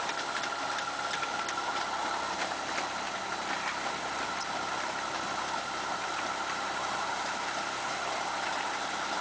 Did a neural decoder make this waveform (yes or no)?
no